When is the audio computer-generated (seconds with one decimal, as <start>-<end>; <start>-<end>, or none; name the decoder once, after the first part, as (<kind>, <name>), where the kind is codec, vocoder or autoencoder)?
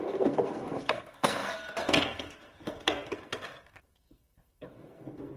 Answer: 0.0-5.4 (codec, SNAC)